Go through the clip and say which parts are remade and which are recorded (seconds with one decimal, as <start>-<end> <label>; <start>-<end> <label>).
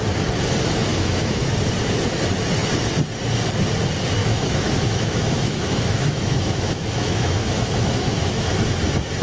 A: 0.0-0.9 recorded; 0.9-1.4 remade; 1.4-4.2 recorded; 4.2-8.5 remade; 8.5-9.2 recorded